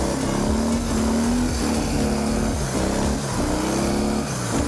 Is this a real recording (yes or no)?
yes